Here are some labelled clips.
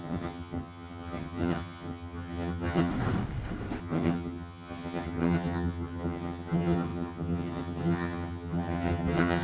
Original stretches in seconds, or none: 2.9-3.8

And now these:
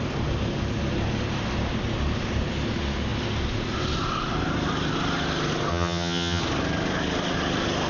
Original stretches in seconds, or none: 0.0-5.7; 6.4-7.9